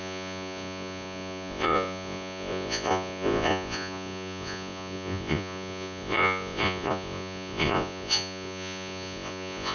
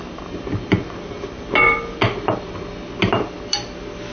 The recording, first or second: second